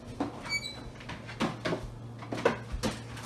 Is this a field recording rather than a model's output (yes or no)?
yes